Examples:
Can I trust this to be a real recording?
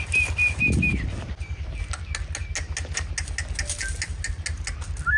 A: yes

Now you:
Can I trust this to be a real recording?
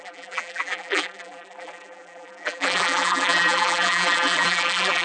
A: no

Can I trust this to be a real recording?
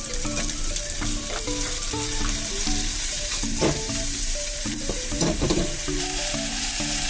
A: no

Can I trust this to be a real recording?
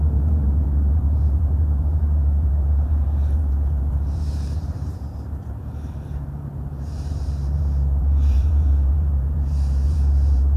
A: no